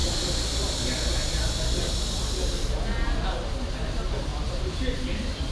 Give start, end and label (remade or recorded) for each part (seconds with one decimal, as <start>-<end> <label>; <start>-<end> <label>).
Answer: 0.0-0.8 remade; 0.8-4.3 recorded; 4.3-5.5 remade